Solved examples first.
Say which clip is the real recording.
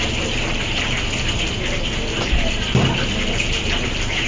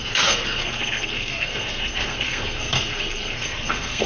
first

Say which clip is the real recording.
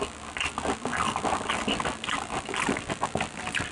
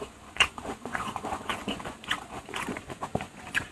first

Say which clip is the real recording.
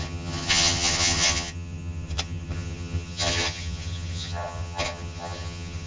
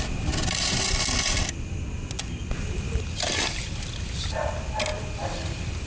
second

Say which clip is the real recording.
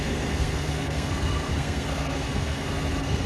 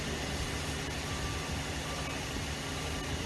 second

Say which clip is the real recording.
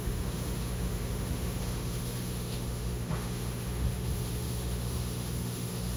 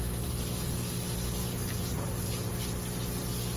second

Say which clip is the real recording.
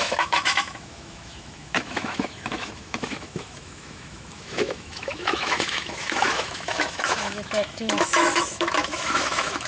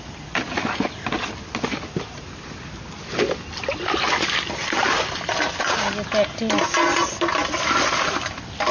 second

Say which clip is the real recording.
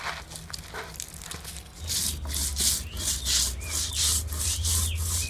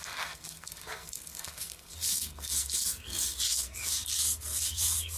first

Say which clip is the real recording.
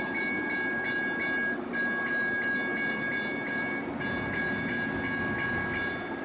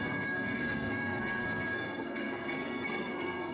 first